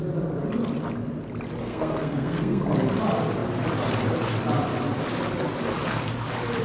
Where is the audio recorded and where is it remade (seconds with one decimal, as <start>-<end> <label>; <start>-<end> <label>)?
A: 0.0-1.6 recorded; 1.6-2.6 remade; 2.6-6.6 recorded